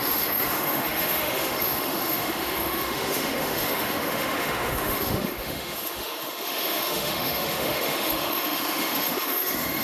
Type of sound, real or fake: fake